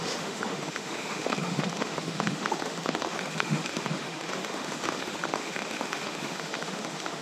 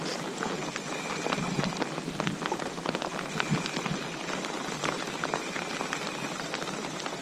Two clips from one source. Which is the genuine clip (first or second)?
second